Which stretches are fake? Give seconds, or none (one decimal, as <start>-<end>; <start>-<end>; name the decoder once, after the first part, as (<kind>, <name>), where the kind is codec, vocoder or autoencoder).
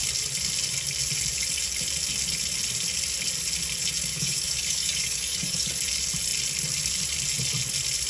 4.1-5.7 (codec, DAC)